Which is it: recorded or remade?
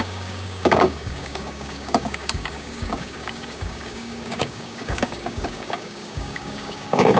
remade